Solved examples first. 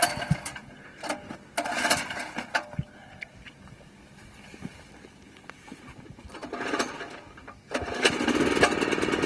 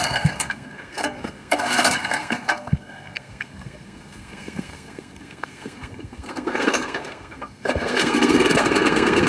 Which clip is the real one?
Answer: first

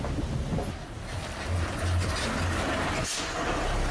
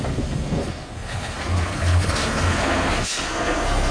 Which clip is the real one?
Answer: first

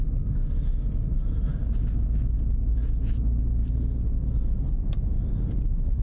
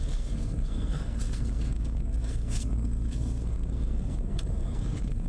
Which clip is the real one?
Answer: first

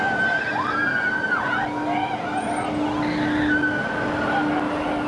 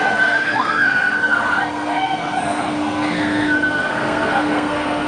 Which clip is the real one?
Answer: first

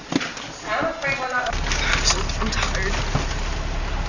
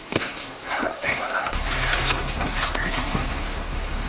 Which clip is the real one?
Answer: first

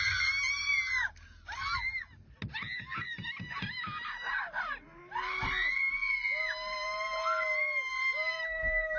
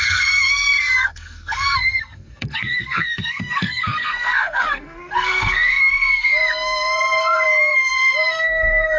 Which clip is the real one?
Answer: first